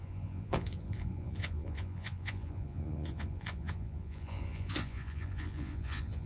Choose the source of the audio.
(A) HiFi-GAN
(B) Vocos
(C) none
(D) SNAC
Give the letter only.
B